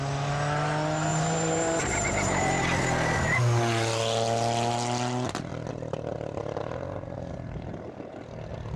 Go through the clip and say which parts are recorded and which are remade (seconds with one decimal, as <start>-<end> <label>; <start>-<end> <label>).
0.0-1.1 recorded; 1.1-1.8 remade; 1.8-8.8 recorded